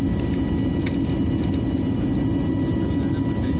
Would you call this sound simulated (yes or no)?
no